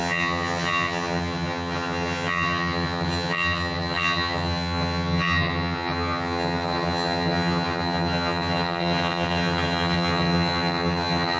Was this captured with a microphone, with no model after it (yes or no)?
no